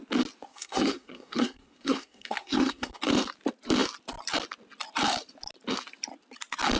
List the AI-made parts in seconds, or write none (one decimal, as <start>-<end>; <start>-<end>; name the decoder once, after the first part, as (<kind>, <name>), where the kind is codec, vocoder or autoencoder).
0.5-3.0 (codec, SNAC)